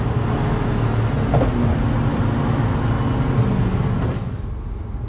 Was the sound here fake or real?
real